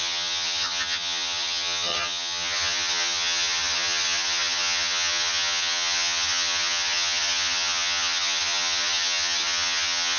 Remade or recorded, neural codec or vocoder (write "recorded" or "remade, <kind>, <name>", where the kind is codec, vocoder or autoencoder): remade, vocoder, HiFi-GAN